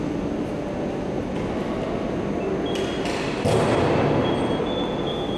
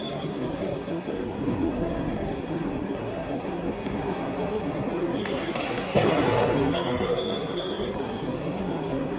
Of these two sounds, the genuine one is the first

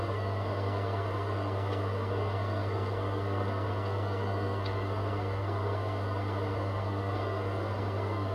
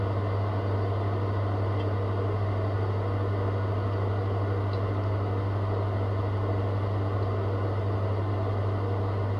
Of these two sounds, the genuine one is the second